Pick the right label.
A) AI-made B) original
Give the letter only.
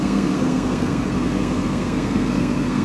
A